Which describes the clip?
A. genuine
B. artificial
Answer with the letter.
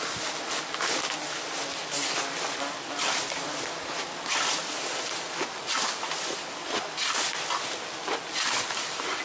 A